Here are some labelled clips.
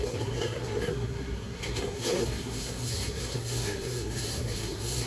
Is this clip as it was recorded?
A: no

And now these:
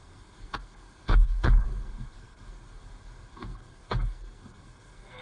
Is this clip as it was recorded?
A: no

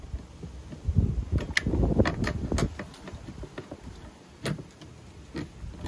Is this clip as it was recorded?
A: yes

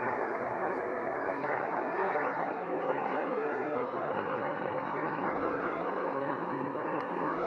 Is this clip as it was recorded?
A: no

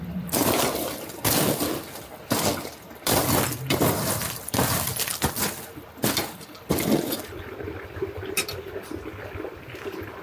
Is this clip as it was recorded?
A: yes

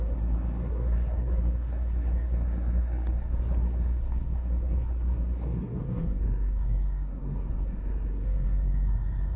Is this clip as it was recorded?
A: no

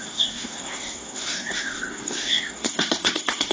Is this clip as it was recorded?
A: no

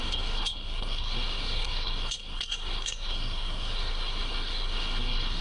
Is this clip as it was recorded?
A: no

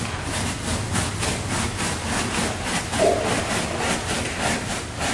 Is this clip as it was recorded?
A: yes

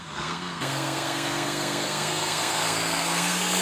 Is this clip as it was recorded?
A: no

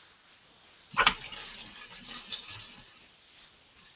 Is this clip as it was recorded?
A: yes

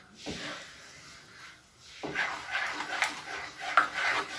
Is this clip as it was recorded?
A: yes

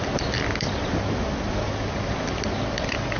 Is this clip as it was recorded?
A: yes